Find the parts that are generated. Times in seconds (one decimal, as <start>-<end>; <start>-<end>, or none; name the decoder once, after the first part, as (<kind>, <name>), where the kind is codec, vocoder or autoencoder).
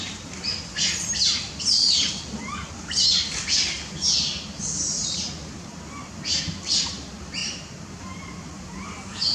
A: none